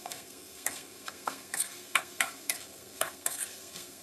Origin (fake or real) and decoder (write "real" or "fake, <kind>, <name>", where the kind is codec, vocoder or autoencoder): fake, codec, SNAC